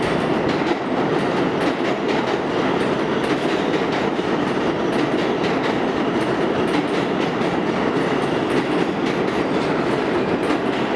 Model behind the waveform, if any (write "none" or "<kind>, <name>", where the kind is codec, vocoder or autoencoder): none